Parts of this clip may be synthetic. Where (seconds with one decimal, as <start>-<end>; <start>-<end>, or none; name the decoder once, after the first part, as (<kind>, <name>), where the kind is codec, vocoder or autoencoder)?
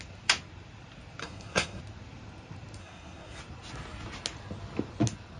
1.2-1.8 (codec, SNAC); 2.8-3.4